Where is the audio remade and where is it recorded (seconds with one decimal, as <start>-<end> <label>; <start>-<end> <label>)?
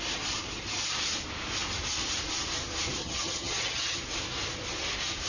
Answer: 0.0-3.0 recorded; 3.0-4.0 remade; 4.0-5.3 recorded